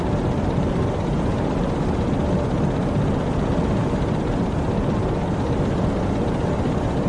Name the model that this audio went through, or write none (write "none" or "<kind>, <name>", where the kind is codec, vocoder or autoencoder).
none